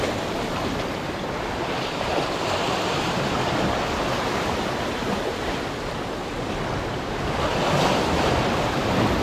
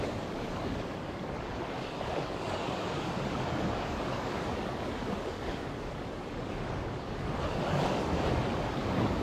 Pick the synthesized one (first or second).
second